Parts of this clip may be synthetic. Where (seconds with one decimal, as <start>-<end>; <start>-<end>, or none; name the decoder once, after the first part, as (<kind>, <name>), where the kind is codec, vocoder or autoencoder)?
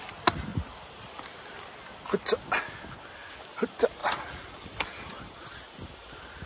4.0-4.6 (vocoder, Vocos)